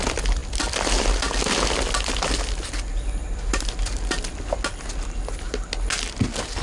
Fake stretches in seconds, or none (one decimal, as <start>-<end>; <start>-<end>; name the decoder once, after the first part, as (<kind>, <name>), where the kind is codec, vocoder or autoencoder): none